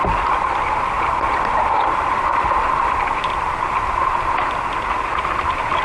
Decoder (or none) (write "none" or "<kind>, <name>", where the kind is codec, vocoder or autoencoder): vocoder, BigVGAN v2